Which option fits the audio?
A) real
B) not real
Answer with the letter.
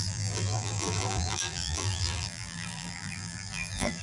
B